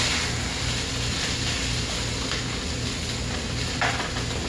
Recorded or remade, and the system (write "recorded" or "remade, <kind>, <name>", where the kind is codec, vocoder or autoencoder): recorded